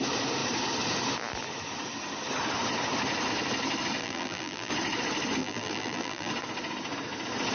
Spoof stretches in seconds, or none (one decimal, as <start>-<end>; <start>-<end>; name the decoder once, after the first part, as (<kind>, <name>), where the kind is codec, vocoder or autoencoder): 4.0-4.7 (vocoder, BigVGAN v2); 5.4-6.3